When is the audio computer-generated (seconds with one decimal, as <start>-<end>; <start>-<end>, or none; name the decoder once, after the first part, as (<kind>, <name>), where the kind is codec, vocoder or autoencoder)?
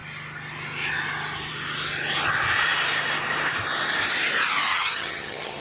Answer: 4.7-5.6 (vocoder, HiFi-GAN)